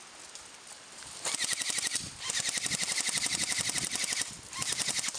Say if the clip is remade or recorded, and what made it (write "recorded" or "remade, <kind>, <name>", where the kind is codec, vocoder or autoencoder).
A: recorded